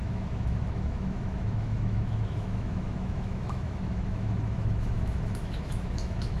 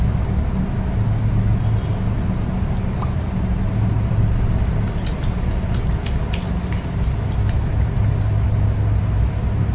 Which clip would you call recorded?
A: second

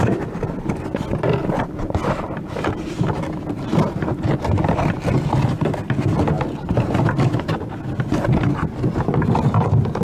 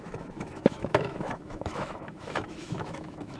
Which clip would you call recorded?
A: first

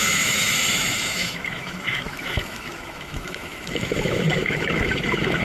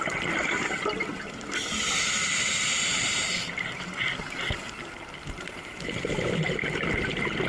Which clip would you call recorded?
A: second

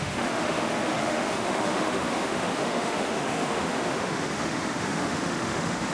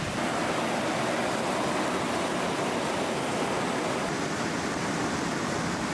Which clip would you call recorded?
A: second